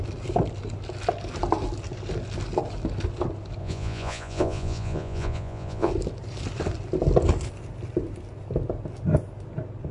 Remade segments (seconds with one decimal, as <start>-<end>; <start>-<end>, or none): 3.6-5.9